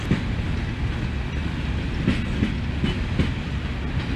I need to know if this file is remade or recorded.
recorded